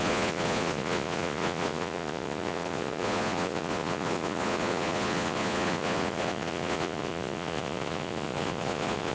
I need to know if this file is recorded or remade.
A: remade